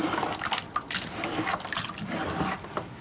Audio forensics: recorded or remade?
recorded